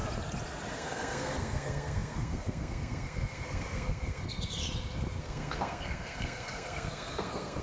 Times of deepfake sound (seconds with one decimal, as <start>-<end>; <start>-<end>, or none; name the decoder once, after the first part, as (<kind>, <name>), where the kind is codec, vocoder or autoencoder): 0.7-4.6 (codec, SNAC); 5.2-7.6